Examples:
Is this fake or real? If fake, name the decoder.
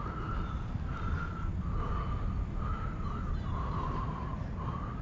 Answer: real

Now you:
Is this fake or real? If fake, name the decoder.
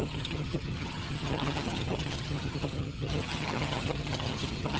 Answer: fake, vocoder, HiFi-GAN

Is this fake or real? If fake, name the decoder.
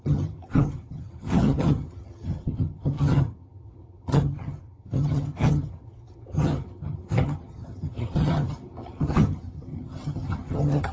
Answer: fake, vocoder, HiFi-GAN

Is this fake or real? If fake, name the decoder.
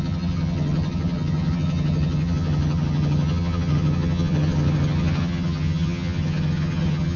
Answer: fake, vocoder, HiFi-GAN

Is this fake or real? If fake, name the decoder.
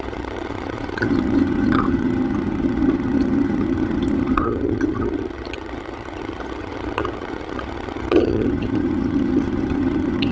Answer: fake, vocoder, HiFi-GAN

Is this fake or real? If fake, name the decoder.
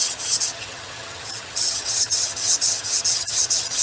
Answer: fake, vocoder, HiFi-GAN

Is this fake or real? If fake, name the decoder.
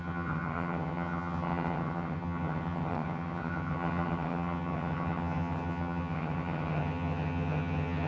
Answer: fake, vocoder, HiFi-GAN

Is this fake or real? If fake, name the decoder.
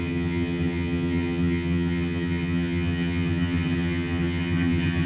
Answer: fake, vocoder, HiFi-GAN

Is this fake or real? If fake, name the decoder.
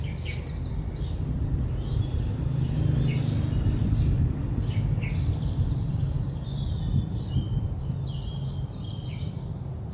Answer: real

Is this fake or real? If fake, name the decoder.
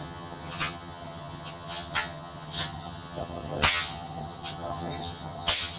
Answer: fake, vocoder, HiFi-GAN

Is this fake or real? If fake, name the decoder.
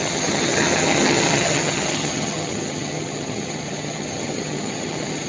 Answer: fake, vocoder, HiFi-GAN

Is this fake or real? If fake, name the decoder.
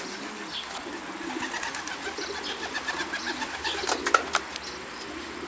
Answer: real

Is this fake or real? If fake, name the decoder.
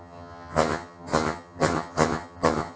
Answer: fake, vocoder, HiFi-GAN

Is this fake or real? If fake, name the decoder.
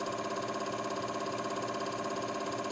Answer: real